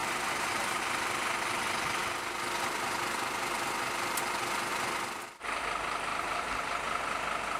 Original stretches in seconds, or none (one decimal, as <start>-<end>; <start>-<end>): 0.8-6.1; 6.7-7.6